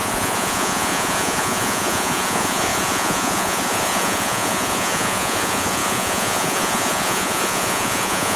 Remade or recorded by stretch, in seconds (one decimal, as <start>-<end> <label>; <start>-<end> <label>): 0.0-8.4 remade